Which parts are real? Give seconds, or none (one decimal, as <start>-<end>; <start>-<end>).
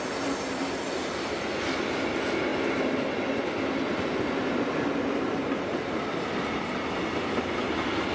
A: 0.0-8.1